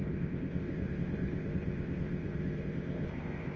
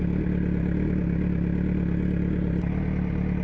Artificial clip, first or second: first